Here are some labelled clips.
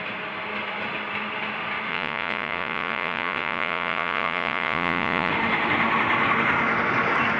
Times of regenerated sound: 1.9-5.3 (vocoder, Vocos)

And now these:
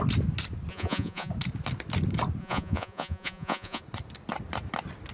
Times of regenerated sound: 0.7-1.3 (vocoder, Vocos); 2.4-3.8

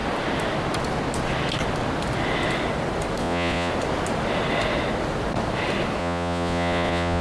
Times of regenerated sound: 3.2-3.7 (vocoder, Vocos); 6.0-7.2

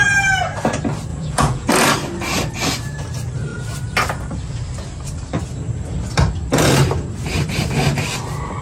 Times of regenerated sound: 1.1-1.7 (vocoder, Vocos)

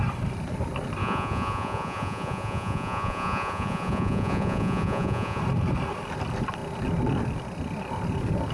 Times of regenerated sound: 1.0-5.4 (vocoder, Vocos)

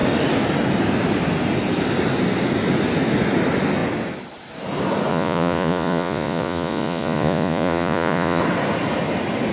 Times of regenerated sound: 5.1-8.4 (vocoder, Vocos)